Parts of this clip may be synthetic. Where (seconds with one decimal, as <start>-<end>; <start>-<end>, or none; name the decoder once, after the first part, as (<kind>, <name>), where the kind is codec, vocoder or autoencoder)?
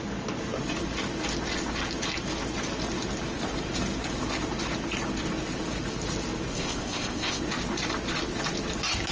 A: 6.5-7.4 (codec, ZipCodec)